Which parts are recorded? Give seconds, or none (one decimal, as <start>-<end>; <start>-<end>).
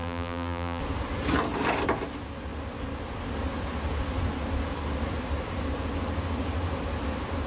0.8-7.5